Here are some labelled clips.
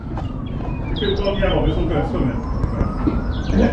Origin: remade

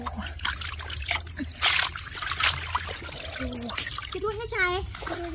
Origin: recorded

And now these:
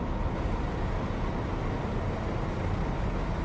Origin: recorded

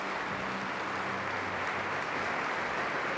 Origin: recorded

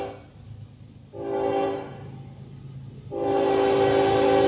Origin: recorded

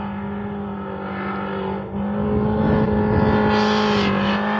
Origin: recorded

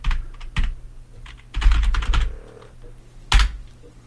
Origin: recorded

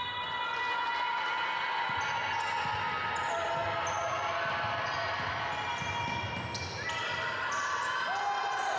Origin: recorded